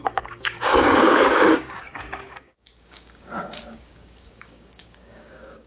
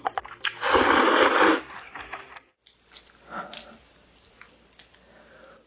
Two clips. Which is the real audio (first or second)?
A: second